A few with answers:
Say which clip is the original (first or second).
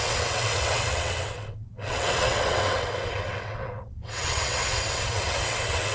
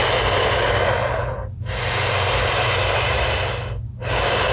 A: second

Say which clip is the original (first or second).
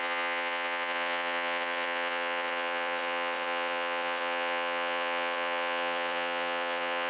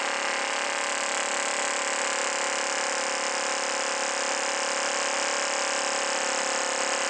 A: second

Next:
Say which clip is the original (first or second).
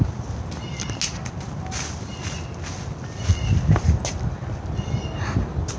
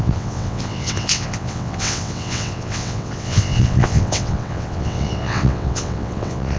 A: first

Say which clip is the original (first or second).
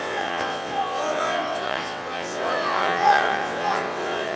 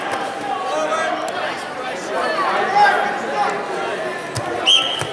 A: second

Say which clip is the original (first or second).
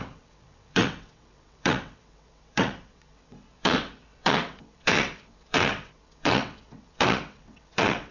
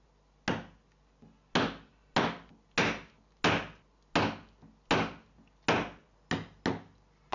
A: second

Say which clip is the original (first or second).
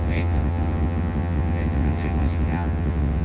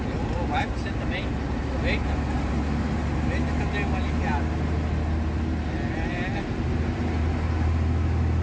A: second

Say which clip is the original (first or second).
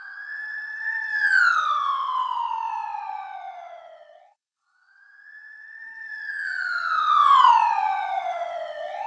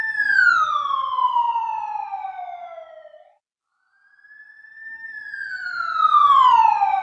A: second